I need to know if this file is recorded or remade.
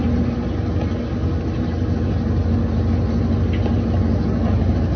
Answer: recorded